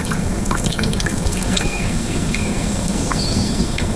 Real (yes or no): no